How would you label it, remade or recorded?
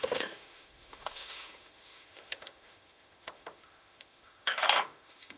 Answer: remade